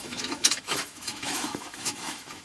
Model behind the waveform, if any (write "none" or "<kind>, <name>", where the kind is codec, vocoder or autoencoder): autoencoder, DAC-VAE